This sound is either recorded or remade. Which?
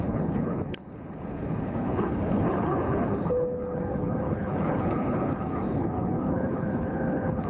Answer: remade